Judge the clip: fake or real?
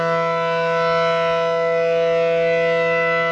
real